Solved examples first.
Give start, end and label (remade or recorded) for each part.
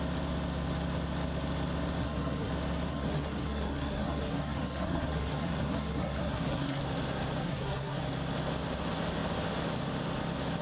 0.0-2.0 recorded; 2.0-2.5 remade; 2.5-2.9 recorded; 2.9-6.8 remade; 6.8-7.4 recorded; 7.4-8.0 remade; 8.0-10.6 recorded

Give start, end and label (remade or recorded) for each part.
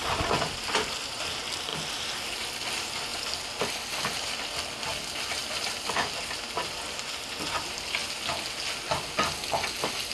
0.0-10.1 recorded